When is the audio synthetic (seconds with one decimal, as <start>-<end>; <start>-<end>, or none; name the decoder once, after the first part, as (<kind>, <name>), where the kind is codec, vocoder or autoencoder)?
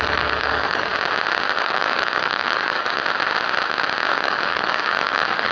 0.0-0.9 (codec, DAC); 1.6-3.0; 4.1-5.5